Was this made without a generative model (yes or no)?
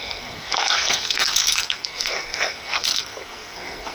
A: no